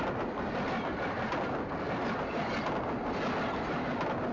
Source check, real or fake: real